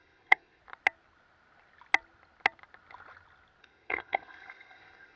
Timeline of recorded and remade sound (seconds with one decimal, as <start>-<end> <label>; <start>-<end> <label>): 0.0-0.6 remade; 0.6-3.6 recorded; 3.6-5.2 remade